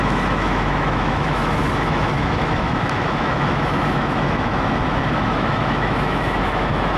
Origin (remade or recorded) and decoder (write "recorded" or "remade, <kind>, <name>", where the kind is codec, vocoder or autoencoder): remade, autoencoder, DAC-VAE